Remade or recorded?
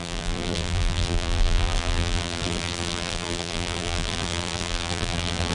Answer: remade